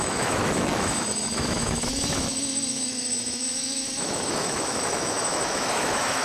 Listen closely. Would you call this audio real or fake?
fake